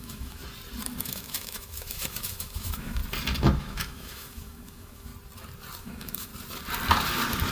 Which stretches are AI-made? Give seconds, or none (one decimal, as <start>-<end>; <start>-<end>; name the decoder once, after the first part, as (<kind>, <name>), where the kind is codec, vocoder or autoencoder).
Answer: 0.0-0.4 (autoencoder, DAC-VAE); 1.0-3.0; 3.6-5.1; 5.8-6.3